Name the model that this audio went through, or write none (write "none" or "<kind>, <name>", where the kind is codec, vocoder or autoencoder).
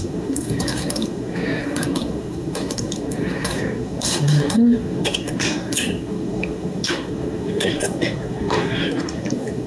codec, SNAC